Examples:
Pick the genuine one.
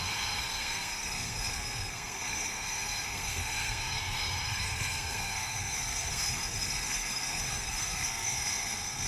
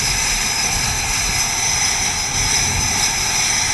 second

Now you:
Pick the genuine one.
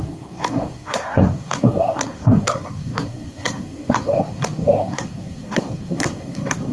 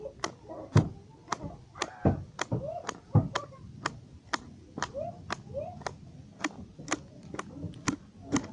second